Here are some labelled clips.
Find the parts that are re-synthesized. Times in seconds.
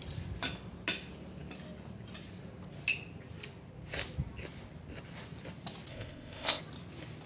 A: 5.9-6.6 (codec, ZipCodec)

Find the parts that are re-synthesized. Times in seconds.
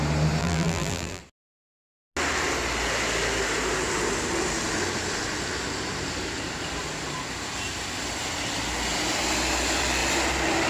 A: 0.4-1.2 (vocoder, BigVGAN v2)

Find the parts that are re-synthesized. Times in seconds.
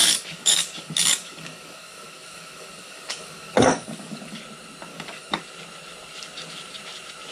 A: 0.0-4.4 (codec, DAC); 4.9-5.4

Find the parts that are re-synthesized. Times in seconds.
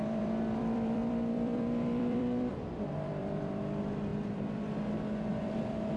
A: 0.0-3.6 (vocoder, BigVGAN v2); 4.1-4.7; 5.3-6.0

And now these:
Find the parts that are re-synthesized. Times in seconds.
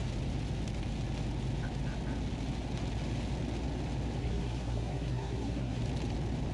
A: 4.2-5.8 (codec, SNAC)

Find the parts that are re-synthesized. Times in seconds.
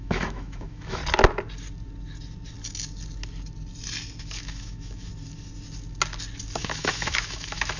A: 0.0-1.0 (autoencoder, DAC-VAE); 4.2-5.1; 6.6-7.8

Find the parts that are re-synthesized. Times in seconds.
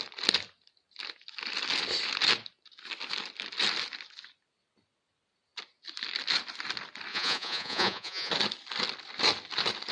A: 7.1-8.3 (vocoder, Vocos)